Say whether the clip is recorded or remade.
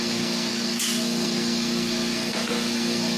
remade